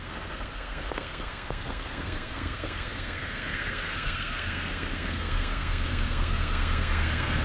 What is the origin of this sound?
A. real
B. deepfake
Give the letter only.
B